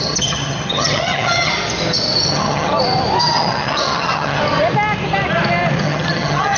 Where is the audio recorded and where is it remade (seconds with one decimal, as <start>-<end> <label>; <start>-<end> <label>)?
0.0-1.5 remade; 1.5-2.3 recorded; 2.3-2.7 remade; 2.7-3.2 recorded; 3.2-4.4 remade; 4.4-5.8 recorded; 5.8-6.6 remade